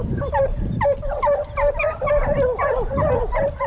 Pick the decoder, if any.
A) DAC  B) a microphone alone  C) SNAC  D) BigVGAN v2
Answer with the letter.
B